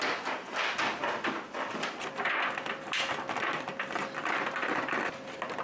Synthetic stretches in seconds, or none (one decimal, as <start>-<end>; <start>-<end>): none